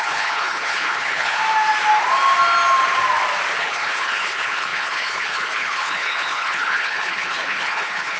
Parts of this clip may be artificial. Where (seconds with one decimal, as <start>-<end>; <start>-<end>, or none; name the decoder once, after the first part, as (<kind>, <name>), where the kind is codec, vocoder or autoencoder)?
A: 0.0-1.4 (codec, HILCodec); 3.6-8.2